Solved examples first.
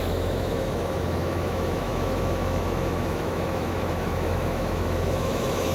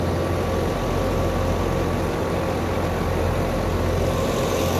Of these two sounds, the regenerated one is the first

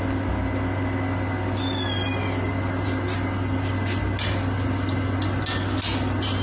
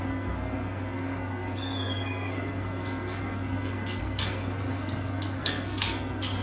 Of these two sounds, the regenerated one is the second